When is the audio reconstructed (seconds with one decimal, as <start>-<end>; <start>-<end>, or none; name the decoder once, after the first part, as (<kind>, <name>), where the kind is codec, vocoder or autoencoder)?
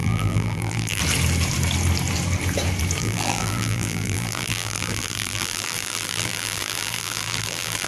0.0-1.0 (vocoder, BigVGAN v2); 3.0-7.9